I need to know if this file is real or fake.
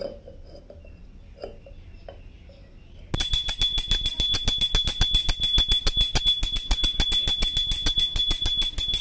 real